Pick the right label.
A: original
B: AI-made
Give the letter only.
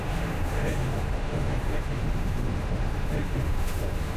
B